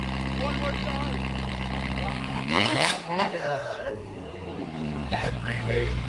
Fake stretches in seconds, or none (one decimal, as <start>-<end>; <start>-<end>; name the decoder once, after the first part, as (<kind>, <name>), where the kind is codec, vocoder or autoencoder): 2.1-6.1 (codec, SNAC)